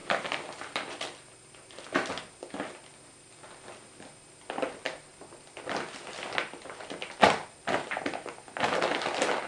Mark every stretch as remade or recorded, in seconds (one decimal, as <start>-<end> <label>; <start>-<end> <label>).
0.0-9.5 recorded